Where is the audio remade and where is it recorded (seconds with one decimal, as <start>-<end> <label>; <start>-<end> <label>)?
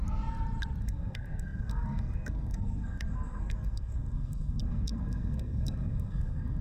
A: 0.0-0.8 recorded; 0.8-6.6 remade